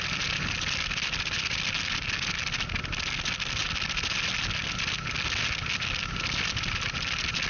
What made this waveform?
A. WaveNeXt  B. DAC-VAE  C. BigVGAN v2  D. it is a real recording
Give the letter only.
D